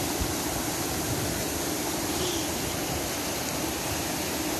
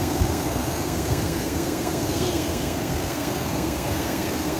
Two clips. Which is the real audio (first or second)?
first